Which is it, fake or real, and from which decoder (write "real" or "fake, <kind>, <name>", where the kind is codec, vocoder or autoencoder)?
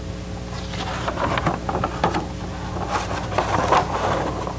real